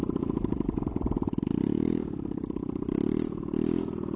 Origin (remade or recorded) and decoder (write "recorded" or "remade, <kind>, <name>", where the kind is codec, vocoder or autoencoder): recorded